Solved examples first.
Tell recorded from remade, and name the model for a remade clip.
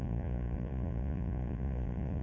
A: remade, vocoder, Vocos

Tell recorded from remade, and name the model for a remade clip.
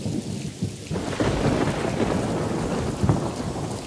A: recorded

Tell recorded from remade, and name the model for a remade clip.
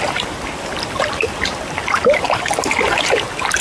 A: recorded